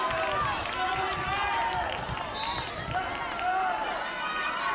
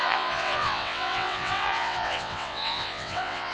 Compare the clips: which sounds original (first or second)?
first